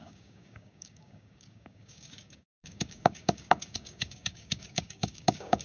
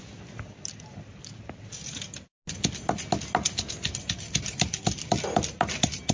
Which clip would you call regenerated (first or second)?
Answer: first